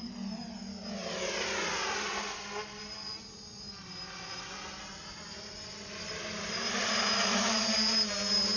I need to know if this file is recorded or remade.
recorded